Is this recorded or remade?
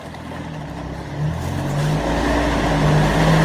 recorded